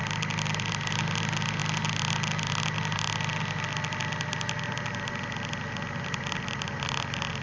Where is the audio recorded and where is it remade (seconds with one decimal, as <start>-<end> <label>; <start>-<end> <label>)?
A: 0.0-7.4 recorded

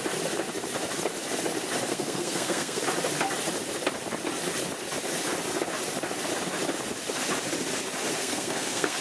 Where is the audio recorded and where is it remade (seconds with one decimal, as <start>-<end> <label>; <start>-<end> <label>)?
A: 0.0-1.9 recorded; 1.9-2.8 remade; 2.8-8.1 recorded; 8.1-9.0 remade

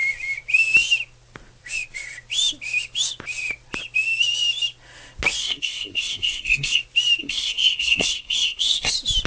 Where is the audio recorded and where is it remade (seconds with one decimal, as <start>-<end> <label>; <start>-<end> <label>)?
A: 0.0-5.4 recorded; 5.4-6.8 remade; 6.8-7.2 recorded; 7.2-8.9 remade; 8.9-9.3 recorded

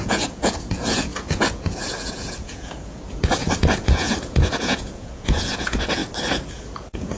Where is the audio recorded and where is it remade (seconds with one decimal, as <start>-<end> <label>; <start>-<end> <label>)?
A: 0.0-6.0 remade; 6.0-6.5 recorded; 6.5-7.2 remade

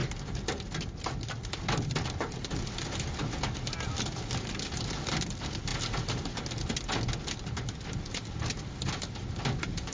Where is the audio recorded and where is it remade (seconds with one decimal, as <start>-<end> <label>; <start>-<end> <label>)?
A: 0.0-9.9 recorded